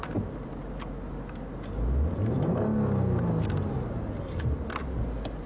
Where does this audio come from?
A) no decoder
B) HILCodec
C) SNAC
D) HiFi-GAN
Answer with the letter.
A